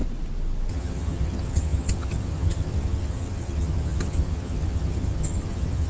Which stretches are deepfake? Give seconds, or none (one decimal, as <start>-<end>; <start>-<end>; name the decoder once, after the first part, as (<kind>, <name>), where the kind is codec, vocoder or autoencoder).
0.7-5.9 (vocoder, HiFi-GAN)